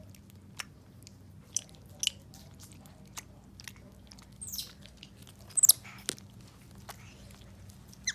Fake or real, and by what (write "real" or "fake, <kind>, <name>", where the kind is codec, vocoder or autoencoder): real